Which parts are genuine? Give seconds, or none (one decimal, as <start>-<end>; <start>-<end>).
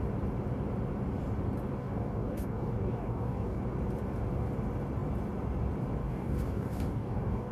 0.0-1.8; 3.6-6.0